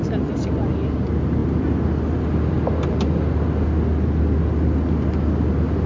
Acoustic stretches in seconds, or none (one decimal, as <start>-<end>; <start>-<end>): 0.0-5.9